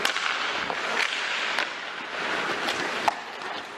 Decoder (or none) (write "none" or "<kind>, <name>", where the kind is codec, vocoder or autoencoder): none